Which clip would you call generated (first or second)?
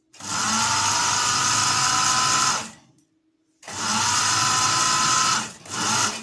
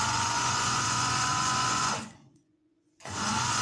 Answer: second